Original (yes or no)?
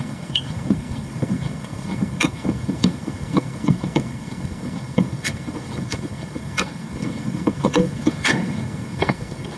no